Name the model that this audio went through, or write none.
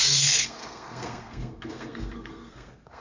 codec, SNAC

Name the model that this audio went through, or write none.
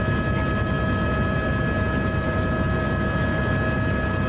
none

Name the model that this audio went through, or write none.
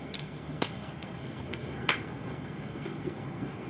codec, SNAC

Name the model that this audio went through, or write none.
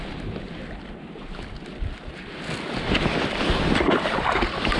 none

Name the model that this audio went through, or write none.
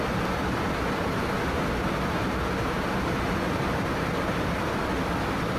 none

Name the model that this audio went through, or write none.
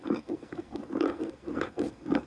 codec, SNAC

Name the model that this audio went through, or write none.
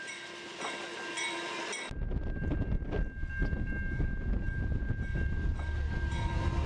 none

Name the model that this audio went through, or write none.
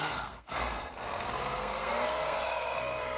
codec, SNAC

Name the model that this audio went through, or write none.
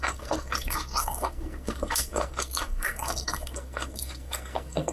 codec, SNAC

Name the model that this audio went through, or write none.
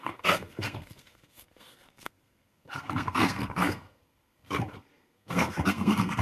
codec, SNAC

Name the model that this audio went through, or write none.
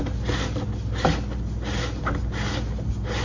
none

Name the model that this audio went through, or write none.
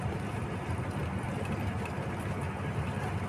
none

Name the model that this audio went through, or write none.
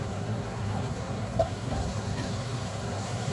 codec, SNAC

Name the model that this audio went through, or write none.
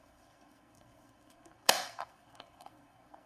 codec, SNAC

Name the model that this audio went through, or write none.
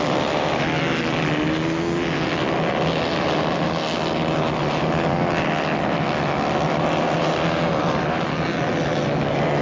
none